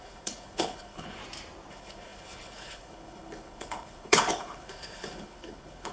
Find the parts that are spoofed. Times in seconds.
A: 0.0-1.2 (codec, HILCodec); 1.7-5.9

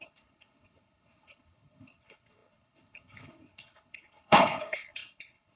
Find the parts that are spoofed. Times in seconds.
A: 0.0-5.6 (codec, HILCodec)

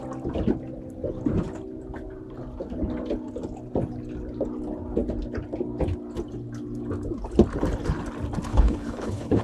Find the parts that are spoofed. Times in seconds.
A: 8.5-9.4 (codec, HILCodec)

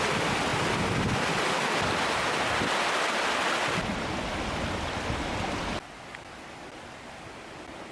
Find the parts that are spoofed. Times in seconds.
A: none

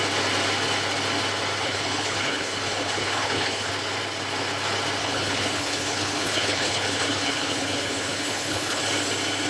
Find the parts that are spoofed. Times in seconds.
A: 1.6-3.7 (codec, HILCodec); 5.0-8.8

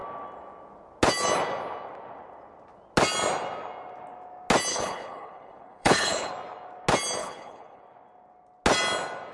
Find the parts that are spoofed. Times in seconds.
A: 4.7-6.3 (codec, HILCodec); 7.2-7.8

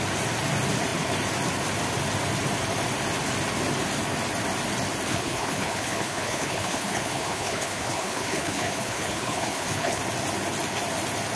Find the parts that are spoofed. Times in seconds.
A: 5.1-10.0 (codec, HILCodec)